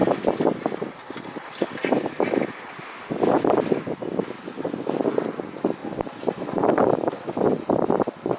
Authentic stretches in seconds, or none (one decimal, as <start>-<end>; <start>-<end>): 0.0-5.8; 7.1-8.4